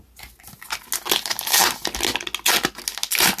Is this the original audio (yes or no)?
yes